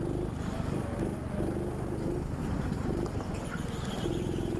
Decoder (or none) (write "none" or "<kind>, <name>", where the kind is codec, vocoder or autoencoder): none